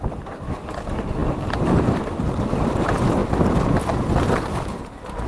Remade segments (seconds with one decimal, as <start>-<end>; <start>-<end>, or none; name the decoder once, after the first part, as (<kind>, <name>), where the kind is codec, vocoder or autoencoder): none